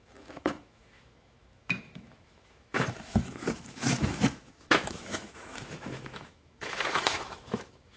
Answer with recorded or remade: remade